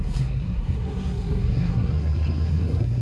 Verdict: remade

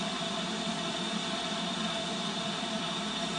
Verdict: recorded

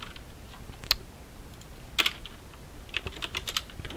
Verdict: recorded